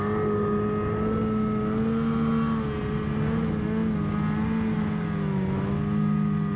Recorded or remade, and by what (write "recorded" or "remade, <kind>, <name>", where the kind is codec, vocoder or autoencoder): recorded